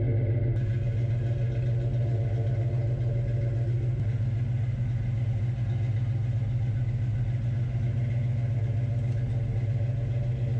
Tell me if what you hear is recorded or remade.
recorded